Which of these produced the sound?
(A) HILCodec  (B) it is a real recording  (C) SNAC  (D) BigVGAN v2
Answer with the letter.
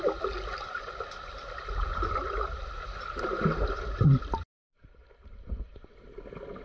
B